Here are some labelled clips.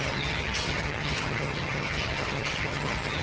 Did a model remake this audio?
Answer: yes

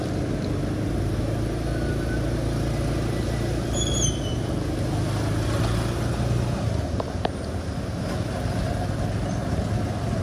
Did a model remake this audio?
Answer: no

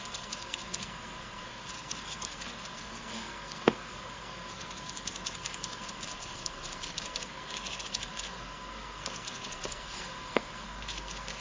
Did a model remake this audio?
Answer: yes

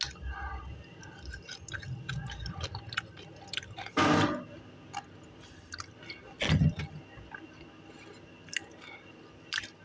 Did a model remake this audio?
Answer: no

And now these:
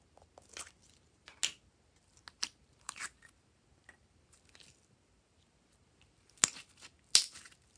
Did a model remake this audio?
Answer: no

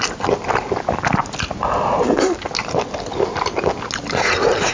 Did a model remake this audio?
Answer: no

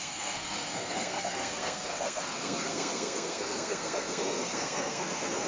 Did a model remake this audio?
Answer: yes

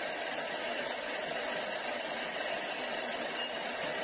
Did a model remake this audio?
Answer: no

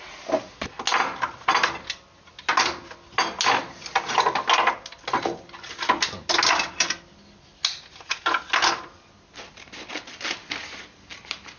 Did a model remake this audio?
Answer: no